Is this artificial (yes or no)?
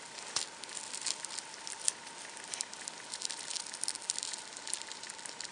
no